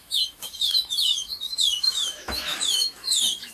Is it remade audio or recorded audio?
remade